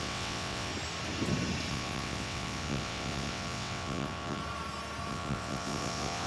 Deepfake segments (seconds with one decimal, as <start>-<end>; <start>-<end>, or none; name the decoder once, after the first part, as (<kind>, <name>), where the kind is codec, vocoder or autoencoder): 0.0-0.7 (vocoder, WaveNeXt); 1.7-4.4; 5.1-6.3